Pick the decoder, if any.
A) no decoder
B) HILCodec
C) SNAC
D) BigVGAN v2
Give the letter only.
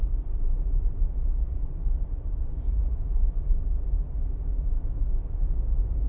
D